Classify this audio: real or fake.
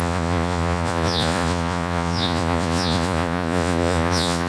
fake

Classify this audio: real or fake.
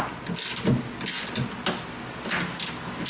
real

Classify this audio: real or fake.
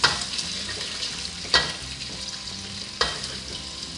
real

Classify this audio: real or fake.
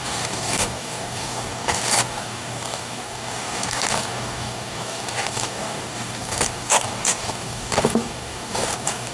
fake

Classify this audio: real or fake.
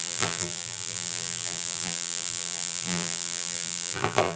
fake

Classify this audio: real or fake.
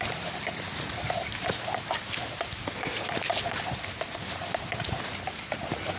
fake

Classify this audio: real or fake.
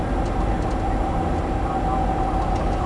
real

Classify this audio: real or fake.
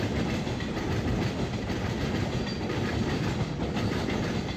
fake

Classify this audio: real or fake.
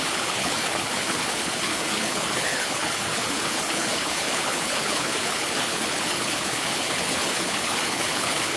fake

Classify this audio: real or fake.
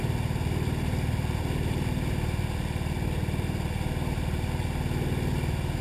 real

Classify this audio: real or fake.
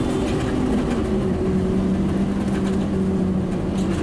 real